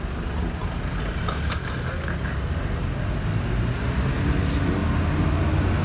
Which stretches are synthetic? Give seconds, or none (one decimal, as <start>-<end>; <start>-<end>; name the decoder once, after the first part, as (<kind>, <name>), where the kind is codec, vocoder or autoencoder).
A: none